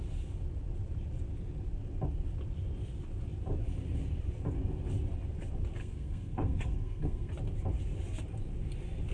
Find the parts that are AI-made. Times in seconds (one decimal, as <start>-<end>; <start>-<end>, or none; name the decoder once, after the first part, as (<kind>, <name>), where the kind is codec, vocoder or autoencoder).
5.8-7.3 (codec, SNAC)